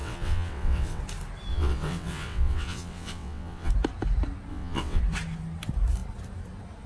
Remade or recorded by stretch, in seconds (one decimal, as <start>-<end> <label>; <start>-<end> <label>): 0.0-1.0 remade; 1.0-1.5 recorded; 1.5-3.7 remade; 3.7-4.5 recorded; 4.5-5.0 remade; 5.0-6.9 recorded